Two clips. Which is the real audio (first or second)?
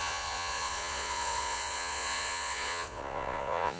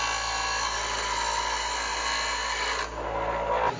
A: second